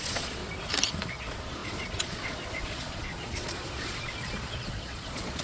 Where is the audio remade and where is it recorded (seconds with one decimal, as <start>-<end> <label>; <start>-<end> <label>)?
0.0-0.4 remade; 0.4-1.1 recorded; 1.1-5.4 remade